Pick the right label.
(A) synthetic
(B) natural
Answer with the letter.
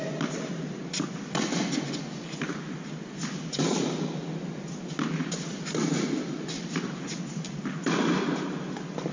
B